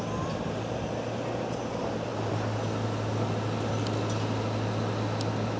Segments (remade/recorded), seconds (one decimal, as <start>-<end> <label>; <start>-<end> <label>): 0.0-5.6 recorded